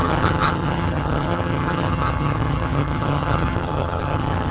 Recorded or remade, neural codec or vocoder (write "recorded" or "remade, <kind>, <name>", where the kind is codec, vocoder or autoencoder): remade, vocoder, HiFi-GAN